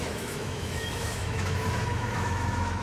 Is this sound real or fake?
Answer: fake